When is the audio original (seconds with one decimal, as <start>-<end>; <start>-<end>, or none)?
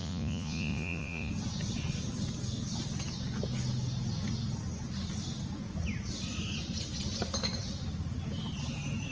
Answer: 1.3-9.1